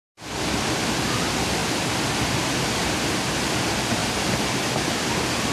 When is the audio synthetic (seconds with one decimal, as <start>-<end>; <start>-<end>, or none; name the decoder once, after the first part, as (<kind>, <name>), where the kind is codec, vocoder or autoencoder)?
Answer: none